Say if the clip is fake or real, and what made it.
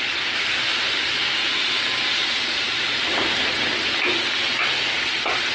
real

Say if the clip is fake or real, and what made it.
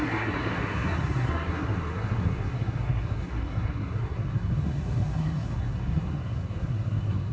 fake, codec, SNAC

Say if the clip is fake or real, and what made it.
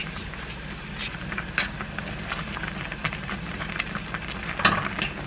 real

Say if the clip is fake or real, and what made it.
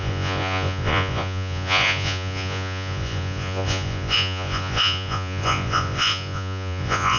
fake, vocoder, Vocos